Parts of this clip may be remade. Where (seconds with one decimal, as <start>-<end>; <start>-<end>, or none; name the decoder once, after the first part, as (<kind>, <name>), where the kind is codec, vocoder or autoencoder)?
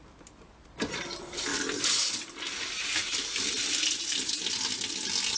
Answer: none